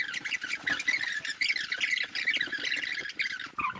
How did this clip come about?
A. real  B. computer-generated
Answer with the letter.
A